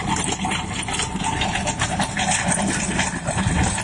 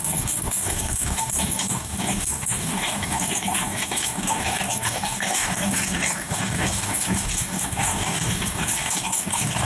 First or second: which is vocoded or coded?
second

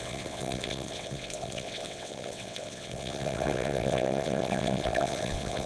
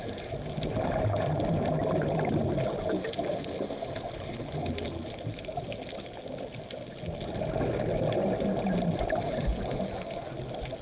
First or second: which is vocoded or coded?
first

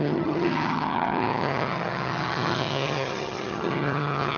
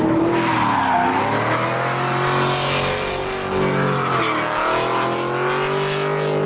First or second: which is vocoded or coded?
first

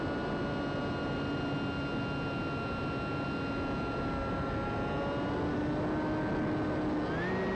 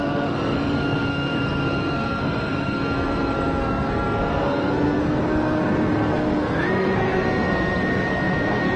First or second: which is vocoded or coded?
second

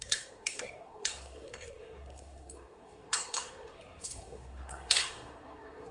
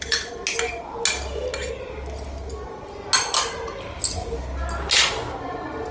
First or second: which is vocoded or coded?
first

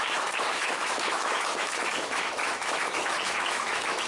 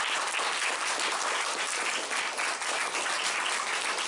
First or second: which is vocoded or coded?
first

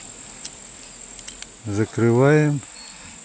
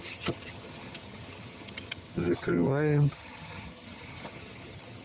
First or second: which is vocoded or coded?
second